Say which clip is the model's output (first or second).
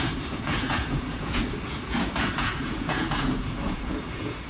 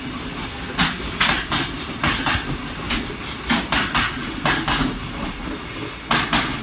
first